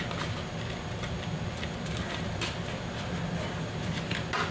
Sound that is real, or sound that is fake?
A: real